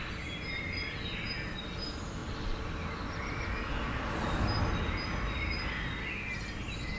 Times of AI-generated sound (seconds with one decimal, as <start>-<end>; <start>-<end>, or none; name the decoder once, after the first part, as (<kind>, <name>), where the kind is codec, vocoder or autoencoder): none